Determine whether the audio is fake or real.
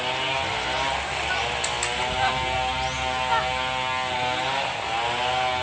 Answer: real